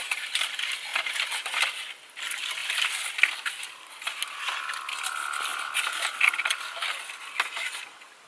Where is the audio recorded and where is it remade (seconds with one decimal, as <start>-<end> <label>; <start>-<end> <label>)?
0.0-0.9 recorded; 0.9-1.9 remade; 1.9-2.6 recorded; 2.6-3.9 remade; 3.9-8.3 recorded